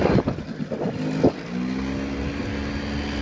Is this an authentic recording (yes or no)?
yes